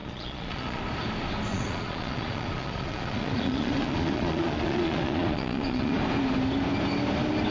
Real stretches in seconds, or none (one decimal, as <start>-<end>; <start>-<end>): 0.8-1.5; 6.0-7.5